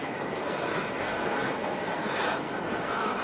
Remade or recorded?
remade